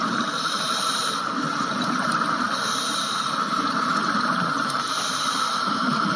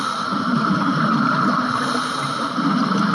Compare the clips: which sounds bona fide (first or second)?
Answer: second